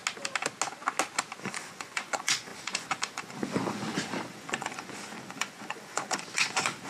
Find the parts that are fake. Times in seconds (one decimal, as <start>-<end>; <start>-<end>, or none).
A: 1.4-6.9